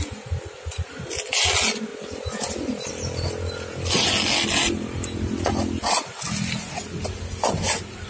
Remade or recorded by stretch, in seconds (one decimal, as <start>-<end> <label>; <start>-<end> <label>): 0.0-8.1 recorded